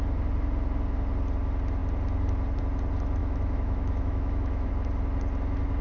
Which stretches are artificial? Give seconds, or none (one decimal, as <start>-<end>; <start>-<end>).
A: 3.2-4.7